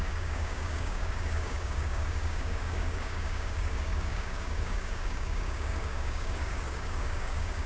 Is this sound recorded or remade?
remade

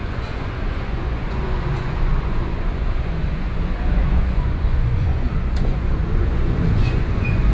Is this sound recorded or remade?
remade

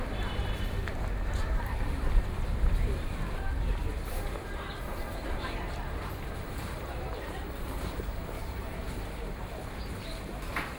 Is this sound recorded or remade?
remade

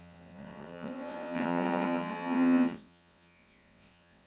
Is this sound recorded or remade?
remade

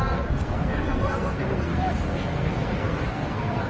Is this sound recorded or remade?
remade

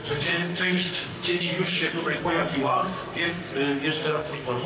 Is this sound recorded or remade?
remade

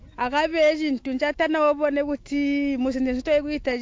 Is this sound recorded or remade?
remade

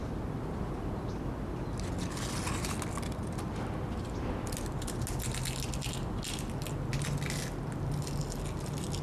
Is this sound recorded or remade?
recorded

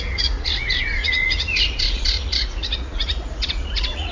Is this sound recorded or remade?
remade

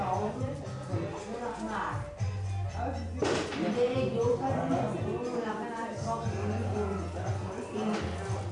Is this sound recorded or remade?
recorded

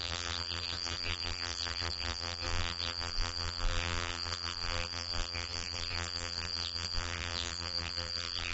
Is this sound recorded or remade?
remade